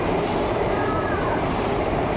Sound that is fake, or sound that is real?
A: fake